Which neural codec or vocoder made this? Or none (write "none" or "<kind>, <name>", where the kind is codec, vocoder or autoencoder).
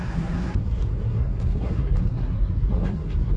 codec, SNAC